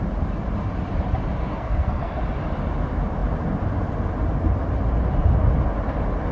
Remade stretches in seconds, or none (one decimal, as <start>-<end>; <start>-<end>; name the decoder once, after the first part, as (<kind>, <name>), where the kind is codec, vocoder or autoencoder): 1.4-2.2 (codec, SNAC)